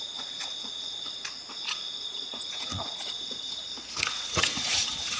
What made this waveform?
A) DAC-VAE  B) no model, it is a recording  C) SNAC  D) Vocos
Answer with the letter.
D